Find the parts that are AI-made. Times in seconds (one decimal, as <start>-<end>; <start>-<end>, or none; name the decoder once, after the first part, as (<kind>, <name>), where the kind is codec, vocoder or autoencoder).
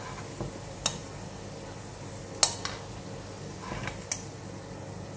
none